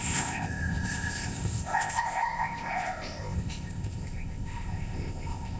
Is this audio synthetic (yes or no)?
yes